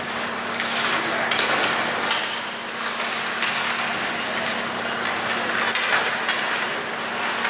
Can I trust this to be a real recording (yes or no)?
yes